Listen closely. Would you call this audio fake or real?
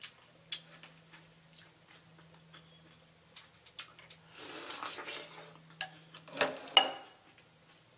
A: real